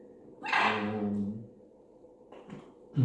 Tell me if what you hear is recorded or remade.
recorded